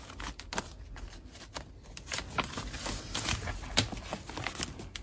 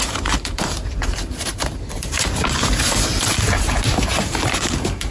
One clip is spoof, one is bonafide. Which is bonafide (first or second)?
first